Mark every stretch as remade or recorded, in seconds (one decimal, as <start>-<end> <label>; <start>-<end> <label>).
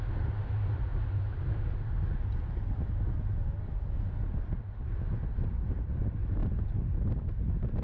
0.0-7.8 recorded